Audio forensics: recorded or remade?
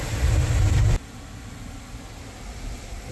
recorded